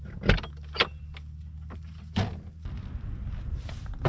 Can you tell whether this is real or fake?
real